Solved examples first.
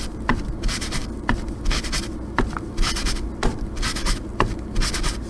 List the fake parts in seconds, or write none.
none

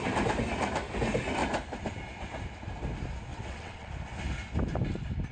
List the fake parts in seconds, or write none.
3.3-3.9 (vocoder, WaveNeXt)

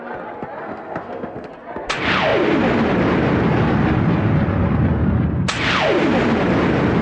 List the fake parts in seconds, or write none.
0.6-1.5 (codec, SNAC)

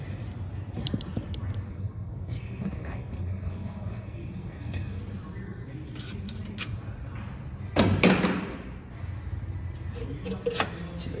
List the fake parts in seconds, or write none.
1.7-5.0 (codec, SNAC)

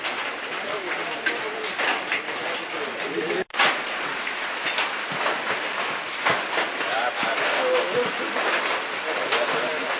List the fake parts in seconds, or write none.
3.5-4.5 (vocoder, Vocos)